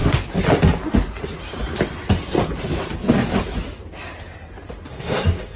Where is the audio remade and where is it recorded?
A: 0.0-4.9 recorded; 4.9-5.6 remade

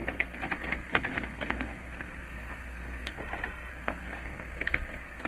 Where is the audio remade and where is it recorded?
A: 0.0-3.2 remade; 3.2-3.7 recorded; 3.7-5.3 remade

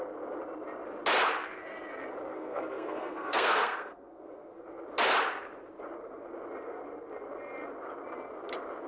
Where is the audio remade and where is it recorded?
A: 0.0-2.3 recorded; 2.3-4.6 remade; 4.6-8.9 recorded

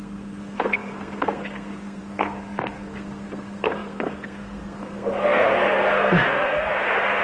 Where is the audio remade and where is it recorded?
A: 0.0-7.2 remade